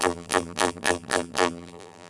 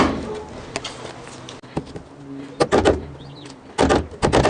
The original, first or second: second